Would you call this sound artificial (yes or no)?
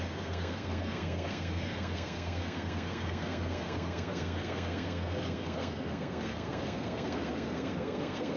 yes